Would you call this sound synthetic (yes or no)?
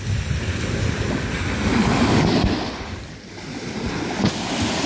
no